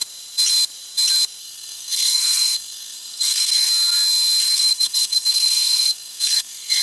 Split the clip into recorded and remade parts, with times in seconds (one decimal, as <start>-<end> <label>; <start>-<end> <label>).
0.0-1.4 recorded; 1.4-3.7 remade; 3.7-4.4 recorded; 4.4-6.8 remade